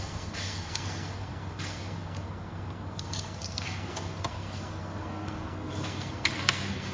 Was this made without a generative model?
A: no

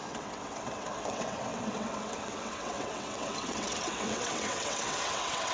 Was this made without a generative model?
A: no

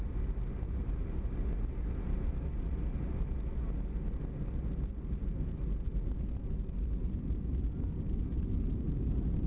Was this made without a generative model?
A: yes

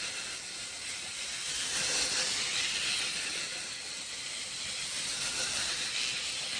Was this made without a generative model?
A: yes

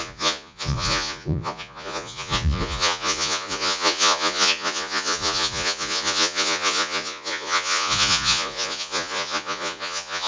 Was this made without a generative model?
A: no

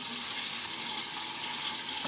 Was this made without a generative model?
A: yes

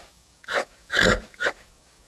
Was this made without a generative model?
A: no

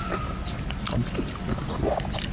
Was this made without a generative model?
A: yes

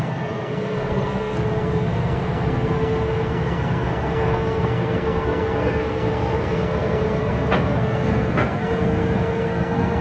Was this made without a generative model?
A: no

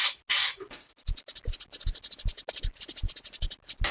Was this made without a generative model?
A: yes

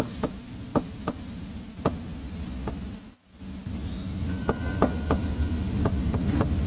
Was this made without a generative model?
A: yes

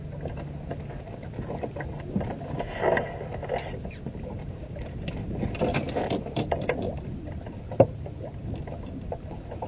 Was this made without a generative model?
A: yes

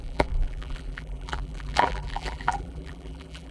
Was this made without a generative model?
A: no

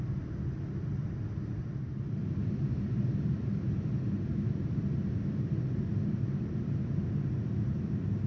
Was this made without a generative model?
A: yes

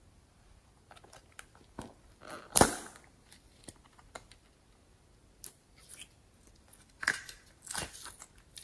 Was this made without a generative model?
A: yes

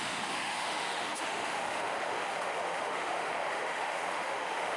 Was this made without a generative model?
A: no